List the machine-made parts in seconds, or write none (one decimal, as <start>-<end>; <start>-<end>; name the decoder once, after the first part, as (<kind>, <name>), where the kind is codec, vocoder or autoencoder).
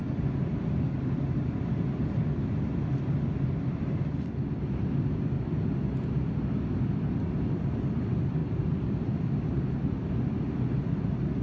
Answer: none